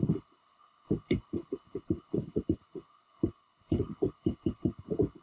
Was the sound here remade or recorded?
remade